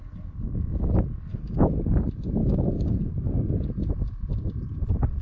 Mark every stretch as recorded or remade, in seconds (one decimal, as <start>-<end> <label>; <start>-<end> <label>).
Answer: 0.0-1.3 recorded; 1.3-1.8 remade; 1.8-2.4 recorded; 2.4-3.9 remade; 3.9-5.2 recorded